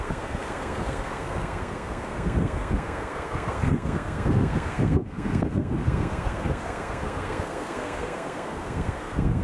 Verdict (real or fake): fake